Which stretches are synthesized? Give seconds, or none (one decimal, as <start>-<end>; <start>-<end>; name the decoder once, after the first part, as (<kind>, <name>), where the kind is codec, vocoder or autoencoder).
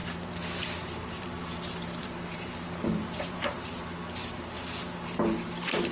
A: 0.0-5.9 (vocoder, BigVGAN v2)